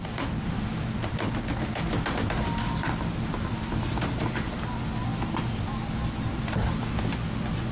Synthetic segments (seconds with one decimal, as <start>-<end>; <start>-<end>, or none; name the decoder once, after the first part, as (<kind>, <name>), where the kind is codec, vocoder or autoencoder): none

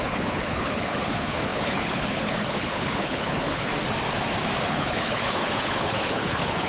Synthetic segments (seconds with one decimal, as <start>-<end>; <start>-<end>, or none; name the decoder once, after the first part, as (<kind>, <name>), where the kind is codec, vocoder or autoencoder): 0.0-3.7 (codec, HILCodec); 4.7-6.7

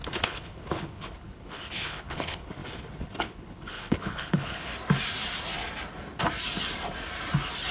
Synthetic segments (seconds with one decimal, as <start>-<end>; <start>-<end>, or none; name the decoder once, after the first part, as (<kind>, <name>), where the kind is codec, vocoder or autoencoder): 0.0-4.7 (codec, HILCodec)